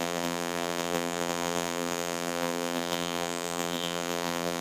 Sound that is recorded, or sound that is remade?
remade